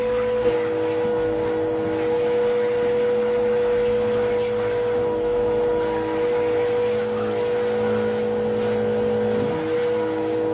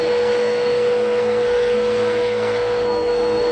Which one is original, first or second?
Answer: first